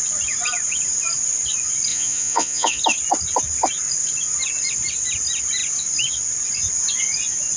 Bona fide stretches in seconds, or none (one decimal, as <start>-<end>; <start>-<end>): 0.0-1.9; 2.8-7.6